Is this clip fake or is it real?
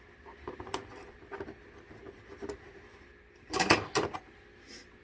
real